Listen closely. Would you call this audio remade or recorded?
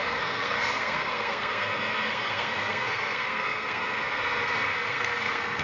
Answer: remade